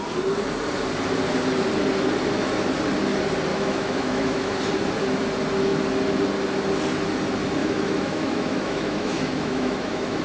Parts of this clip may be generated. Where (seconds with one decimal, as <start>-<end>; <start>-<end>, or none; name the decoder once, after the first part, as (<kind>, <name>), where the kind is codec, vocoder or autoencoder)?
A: 3.5-4.6 (autoencoder, DAC-VAE); 7.6-10.2